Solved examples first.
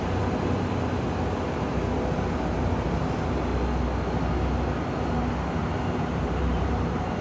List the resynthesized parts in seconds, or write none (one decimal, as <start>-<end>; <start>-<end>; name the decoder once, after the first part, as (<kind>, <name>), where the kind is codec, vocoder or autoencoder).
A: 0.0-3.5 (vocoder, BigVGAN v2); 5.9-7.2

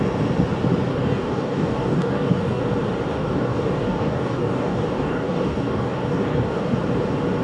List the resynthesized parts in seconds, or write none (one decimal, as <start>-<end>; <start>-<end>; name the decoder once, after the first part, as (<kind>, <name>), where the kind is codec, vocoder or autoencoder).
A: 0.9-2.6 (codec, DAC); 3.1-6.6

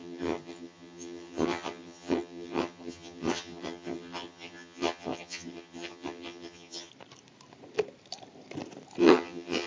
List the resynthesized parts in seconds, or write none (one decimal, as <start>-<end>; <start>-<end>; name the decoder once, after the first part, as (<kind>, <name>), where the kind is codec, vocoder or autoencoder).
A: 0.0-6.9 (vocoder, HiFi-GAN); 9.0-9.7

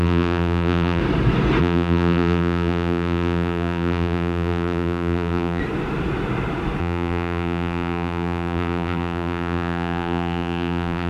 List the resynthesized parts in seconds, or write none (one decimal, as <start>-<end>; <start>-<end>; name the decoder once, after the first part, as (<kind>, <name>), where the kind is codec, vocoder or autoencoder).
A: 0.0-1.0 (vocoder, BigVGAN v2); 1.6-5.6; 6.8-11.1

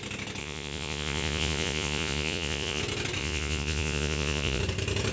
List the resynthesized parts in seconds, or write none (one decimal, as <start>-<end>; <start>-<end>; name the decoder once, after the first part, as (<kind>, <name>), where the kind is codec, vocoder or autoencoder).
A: 0.4-2.8 (vocoder, Vocos); 3.2-4.6

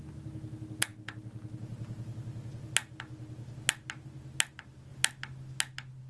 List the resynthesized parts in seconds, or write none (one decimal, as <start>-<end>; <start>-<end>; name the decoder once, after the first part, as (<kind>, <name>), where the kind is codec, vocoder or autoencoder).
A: none

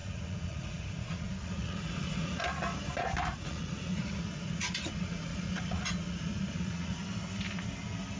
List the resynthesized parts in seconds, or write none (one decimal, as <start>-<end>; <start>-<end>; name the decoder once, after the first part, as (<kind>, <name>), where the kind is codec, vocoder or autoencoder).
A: 0.0-2.4 (vocoder, Vocos); 3.3-7.0

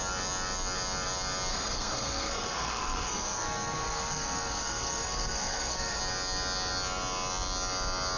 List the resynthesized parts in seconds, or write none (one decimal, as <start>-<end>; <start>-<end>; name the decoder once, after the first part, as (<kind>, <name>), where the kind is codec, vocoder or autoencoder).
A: 1.5-6.0 (codec, SNAC)